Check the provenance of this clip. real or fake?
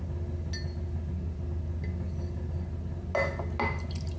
real